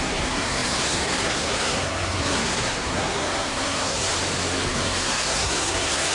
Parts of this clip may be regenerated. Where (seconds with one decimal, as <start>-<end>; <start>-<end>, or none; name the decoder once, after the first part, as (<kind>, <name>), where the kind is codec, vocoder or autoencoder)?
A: 0.0-4.1 (codec, SNAC); 4.7-6.1

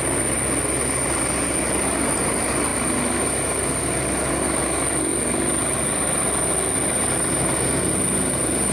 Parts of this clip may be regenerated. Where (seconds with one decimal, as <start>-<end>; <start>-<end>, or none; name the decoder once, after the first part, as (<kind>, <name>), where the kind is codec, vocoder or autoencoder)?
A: none

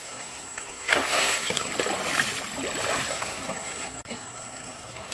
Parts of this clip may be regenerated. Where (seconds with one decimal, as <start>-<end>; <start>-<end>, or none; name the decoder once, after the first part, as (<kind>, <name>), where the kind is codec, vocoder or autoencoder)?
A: 0.0-1.7 (codec, SNAC); 3.1-5.1

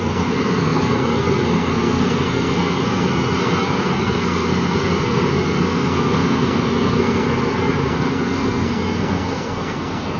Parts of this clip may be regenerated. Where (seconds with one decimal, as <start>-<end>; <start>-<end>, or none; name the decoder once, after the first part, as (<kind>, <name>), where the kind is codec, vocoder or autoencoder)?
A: 0.0-10.2 (codec, SNAC)

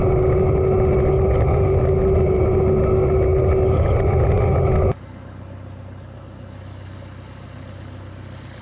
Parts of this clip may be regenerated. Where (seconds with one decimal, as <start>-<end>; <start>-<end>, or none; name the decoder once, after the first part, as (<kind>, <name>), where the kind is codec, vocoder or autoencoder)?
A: none